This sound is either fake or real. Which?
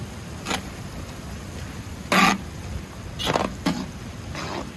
real